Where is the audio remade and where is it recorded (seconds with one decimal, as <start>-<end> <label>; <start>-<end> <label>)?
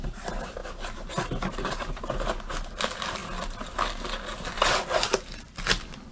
0.0-6.1 recorded